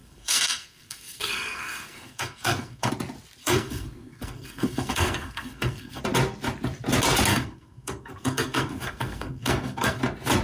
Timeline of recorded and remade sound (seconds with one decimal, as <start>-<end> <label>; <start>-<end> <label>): 0.0-2.9 remade; 2.9-3.4 recorded; 3.4-6.0 remade; 6.0-7.3 recorded; 7.3-10.0 remade; 10.0-10.4 recorded